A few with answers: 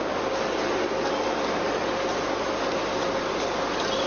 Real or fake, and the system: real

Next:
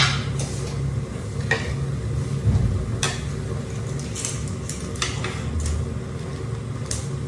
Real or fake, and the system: real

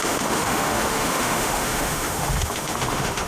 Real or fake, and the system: fake, autoencoder, DAC-VAE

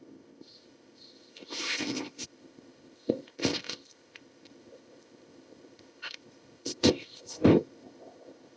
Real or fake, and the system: fake, codec, ZipCodec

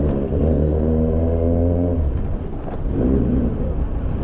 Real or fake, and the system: real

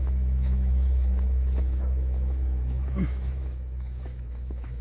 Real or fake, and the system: fake, autoencoder, DAC-VAE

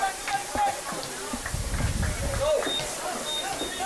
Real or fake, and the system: real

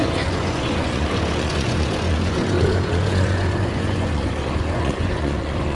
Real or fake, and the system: fake, vocoder, Vocos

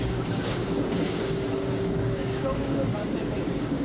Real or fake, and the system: fake, codec, DAC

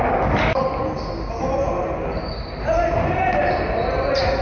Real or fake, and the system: real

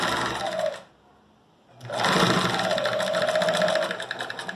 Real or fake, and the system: real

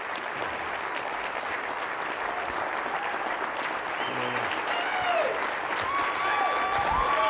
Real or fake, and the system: real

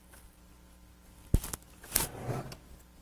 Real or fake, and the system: real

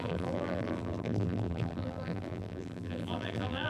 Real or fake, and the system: fake, vocoder, BigVGAN v2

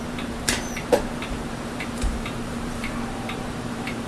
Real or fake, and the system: fake, vocoder, BigVGAN v2